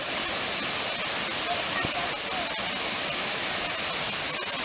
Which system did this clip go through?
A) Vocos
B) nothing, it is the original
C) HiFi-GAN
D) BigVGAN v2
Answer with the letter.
B